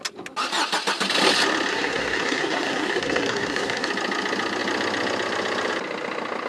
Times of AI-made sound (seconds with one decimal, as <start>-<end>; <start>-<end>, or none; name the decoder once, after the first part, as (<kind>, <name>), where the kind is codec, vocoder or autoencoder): 1.7-3.9 (codec, SNAC)